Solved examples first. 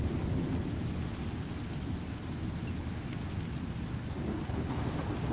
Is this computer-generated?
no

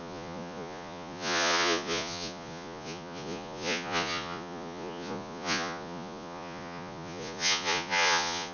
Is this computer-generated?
yes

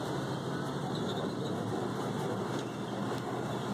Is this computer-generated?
no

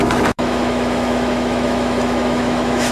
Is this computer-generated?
yes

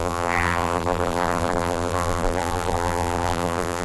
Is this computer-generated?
yes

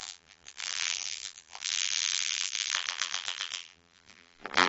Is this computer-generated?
yes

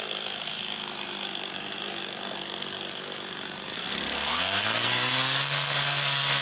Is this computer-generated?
yes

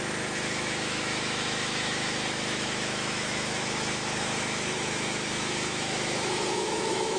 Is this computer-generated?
yes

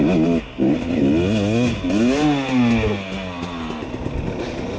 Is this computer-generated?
no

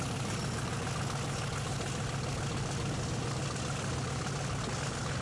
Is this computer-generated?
no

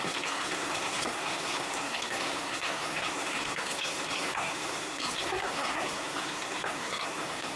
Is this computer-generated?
yes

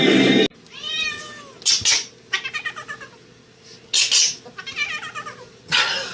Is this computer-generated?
no